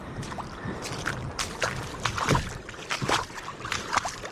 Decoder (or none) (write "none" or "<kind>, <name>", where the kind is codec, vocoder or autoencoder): none